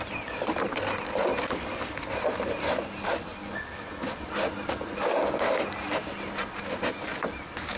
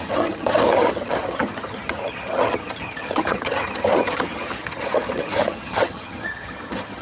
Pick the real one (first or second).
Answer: first